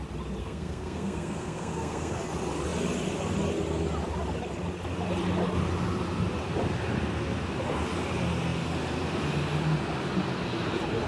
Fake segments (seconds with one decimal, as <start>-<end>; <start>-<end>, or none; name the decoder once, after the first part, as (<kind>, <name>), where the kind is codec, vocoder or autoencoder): 0.4-2.2 (codec, SNAC)